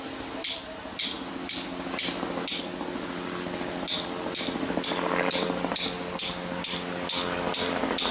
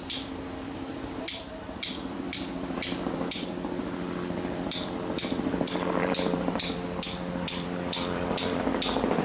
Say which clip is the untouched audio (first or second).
first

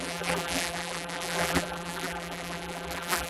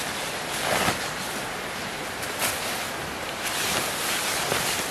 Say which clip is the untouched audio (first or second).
second